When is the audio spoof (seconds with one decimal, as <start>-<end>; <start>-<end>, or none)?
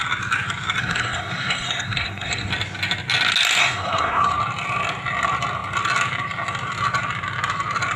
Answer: 0.8-2.5; 3.6-4.3